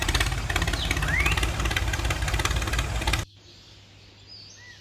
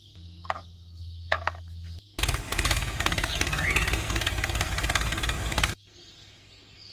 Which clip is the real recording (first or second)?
first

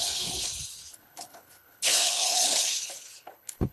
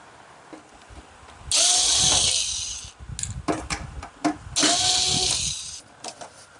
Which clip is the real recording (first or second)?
second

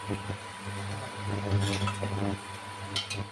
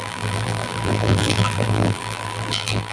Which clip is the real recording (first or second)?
first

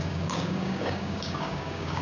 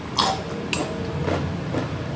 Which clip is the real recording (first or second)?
second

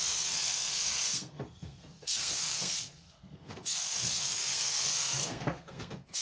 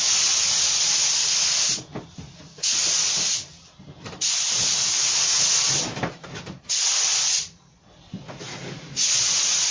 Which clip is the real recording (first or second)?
second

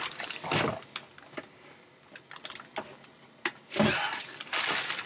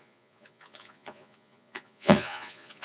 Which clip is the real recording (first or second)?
first